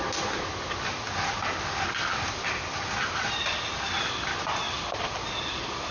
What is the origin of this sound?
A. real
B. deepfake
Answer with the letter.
A